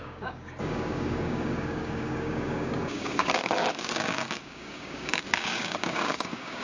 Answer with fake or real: fake